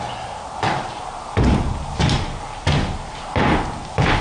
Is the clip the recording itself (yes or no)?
yes